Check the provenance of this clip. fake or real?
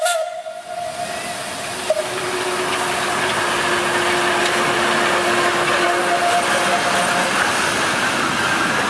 real